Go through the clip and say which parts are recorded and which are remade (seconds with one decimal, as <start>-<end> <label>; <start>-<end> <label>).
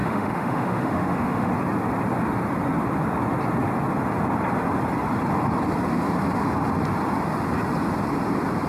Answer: 0.0-1.5 remade; 1.5-8.7 recorded